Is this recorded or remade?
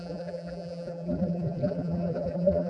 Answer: remade